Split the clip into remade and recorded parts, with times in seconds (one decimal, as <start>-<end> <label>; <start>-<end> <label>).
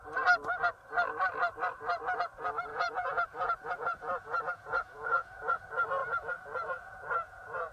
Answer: 0.0-2.7 recorded; 2.7-5.6 remade; 5.6-6.0 recorded; 6.0-7.7 remade